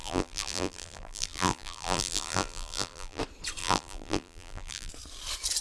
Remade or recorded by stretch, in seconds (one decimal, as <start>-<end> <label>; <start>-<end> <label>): 0.0-3.2 remade; 3.2-3.6 recorded; 3.6-4.9 remade; 4.9-5.6 recorded